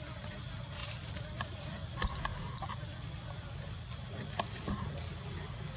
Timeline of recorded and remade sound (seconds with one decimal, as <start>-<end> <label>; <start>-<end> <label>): 0.0-5.8 recorded